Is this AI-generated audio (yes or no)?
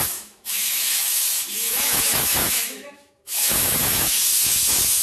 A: yes